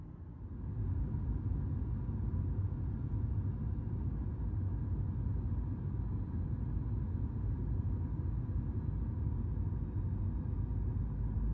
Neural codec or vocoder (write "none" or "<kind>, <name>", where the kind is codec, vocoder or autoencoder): none